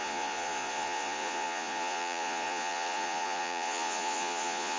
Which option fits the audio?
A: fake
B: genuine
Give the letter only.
A